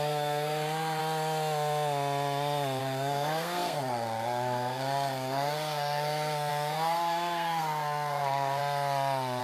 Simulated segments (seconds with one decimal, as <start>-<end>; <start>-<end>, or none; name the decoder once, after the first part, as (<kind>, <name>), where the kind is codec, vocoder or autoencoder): 0.0-1.0 (codec, SNAC); 2.8-8.6